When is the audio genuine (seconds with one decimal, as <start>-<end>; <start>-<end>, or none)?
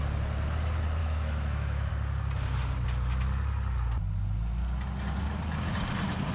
0.0-1.0; 1.9-6.3